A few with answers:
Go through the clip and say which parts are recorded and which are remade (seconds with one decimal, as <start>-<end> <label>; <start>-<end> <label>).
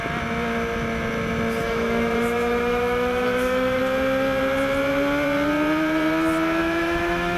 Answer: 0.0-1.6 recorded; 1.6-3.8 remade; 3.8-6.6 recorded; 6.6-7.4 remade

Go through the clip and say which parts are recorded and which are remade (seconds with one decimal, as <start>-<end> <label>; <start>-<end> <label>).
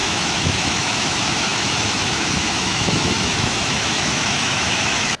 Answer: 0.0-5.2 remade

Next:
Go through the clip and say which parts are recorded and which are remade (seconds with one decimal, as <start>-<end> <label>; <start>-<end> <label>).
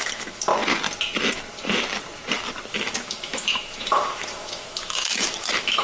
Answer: 0.0-0.5 remade; 0.5-2.7 recorded; 2.7-5.8 remade